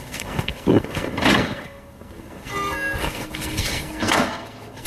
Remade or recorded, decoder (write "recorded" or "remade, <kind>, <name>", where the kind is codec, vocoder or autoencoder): remade, codec, SNAC